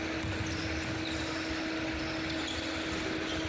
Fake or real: real